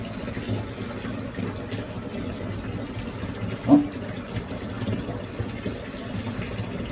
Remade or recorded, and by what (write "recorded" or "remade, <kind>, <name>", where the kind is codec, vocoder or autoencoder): recorded